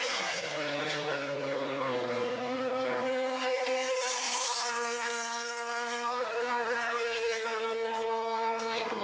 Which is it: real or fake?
fake